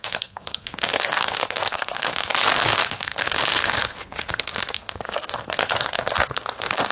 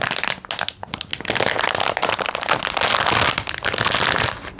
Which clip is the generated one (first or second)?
first